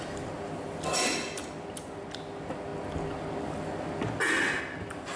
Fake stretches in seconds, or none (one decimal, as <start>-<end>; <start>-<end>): none